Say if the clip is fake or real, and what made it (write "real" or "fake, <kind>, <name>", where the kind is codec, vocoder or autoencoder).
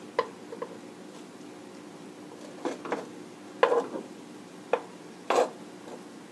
real